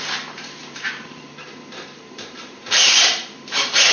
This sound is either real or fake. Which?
fake